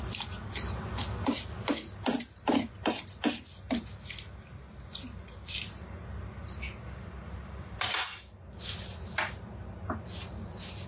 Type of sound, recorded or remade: recorded